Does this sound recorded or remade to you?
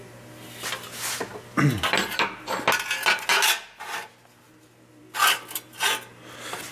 recorded